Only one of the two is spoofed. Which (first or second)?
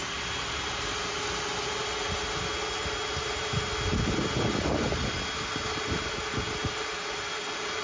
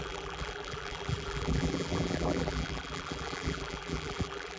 second